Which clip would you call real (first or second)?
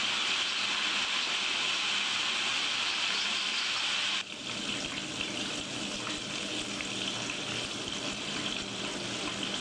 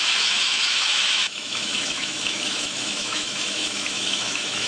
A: first